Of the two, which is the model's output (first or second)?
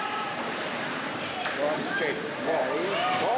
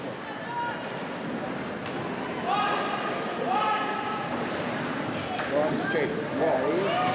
first